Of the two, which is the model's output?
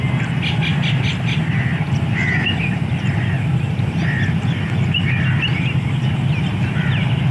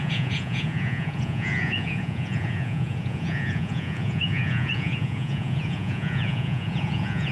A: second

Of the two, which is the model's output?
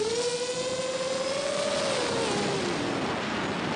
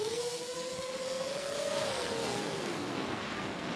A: second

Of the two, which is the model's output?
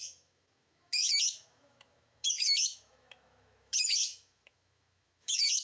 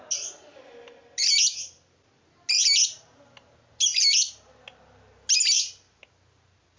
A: first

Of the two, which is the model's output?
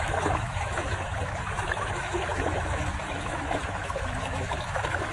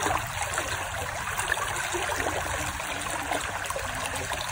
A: first